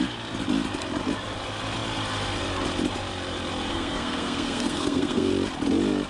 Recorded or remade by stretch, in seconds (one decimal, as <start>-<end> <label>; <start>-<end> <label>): 0.0-3.7 recorded; 3.7-5.3 remade; 5.3-6.1 recorded